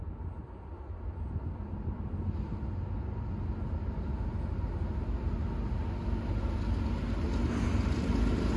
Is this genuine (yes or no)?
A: yes